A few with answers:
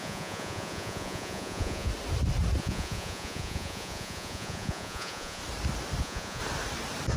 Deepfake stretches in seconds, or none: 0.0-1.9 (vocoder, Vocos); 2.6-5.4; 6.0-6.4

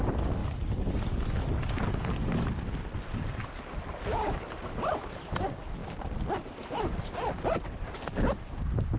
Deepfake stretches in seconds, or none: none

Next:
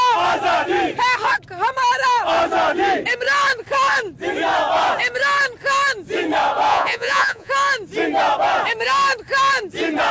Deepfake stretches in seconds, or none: 6.7-7.5 (vocoder, Vocos)

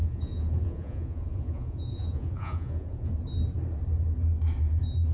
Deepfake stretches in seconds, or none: 0.0-3.1 (vocoder, Vocos)

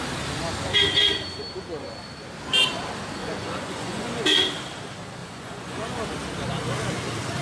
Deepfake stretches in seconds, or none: 3.2-4.1 (vocoder, Vocos); 5.2-5.9

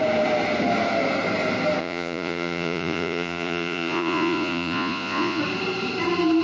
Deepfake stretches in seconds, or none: 1.8-5.4 (vocoder, Vocos)

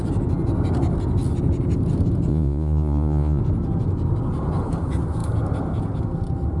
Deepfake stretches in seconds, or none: 2.3-3.4 (vocoder, Vocos)

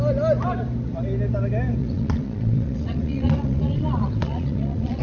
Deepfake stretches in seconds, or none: 1.8-5.0 (vocoder, Vocos)